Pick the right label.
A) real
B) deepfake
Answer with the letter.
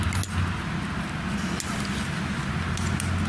A